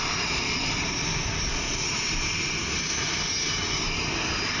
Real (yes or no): yes